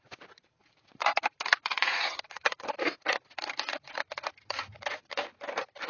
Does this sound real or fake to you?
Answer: fake